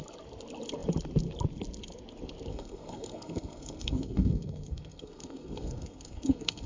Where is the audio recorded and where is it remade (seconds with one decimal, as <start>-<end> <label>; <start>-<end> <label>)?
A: 0.0-2.5 recorded; 2.5-6.7 remade